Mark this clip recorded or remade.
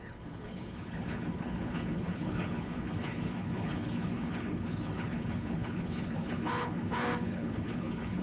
remade